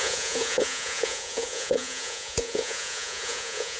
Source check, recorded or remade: remade